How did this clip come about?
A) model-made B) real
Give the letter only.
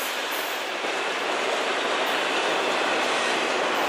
A